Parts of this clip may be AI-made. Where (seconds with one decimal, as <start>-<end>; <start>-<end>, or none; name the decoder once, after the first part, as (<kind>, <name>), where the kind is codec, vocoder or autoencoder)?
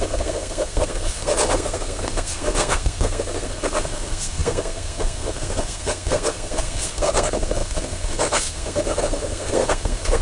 0.0-10.2 (codec, SNAC)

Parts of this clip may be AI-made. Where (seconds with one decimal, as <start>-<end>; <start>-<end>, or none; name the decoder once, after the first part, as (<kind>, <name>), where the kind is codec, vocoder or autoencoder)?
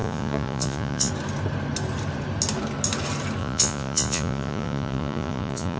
0.0-1.1 (vocoder, Vocos); 3.4-5.8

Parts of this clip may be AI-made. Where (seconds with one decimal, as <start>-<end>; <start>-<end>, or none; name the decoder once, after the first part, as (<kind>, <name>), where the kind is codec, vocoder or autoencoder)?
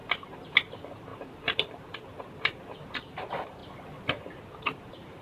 0.7-3.6 (vocoder, BigVGAN v2); 4.1-5.2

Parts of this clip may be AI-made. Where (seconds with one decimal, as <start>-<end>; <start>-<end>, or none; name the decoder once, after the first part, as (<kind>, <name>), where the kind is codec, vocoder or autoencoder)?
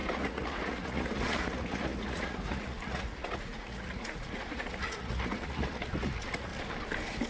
0.0-6.5 (vocoder, Vocos)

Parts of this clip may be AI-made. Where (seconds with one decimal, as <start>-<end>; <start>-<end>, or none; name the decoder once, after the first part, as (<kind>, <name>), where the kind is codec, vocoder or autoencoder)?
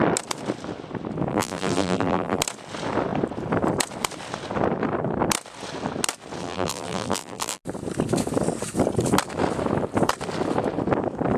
1.3-2.4 (vocoder, BigVGAN v2); 6.4-7.6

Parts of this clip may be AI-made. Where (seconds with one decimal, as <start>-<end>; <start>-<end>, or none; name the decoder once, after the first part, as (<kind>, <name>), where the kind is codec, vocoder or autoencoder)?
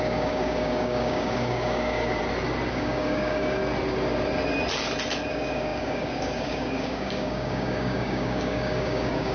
0.0-2.2 (codec, DAC); 2.7-3.6; 5.3-9.3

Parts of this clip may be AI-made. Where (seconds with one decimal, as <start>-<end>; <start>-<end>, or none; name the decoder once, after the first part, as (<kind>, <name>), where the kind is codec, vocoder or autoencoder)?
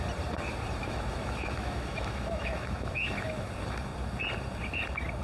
0.8-3.5 (autoencoder, DAC-VAE)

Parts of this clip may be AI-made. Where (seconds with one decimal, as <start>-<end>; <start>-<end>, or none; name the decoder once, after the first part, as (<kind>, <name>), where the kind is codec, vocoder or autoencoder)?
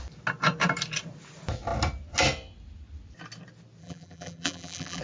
3.8-5.0 (vocoder, BigVGAN v2)